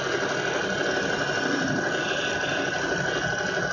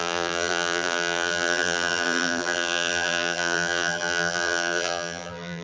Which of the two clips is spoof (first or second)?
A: second